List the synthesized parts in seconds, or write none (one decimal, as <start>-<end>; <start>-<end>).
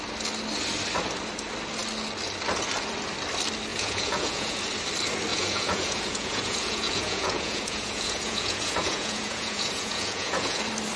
3.7-4.6; 5.3-10.6